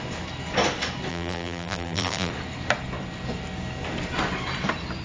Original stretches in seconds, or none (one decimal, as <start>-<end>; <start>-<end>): 0.0-1.1; 2.3-5.0